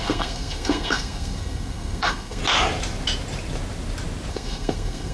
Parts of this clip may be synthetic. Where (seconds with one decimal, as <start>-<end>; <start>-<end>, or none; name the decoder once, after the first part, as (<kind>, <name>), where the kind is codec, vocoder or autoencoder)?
0.0-2.4 (codec, SNAC); 4.3-5.1